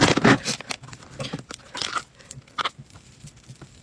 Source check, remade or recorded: remade